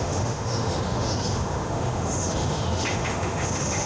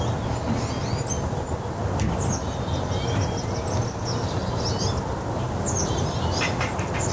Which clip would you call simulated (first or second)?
first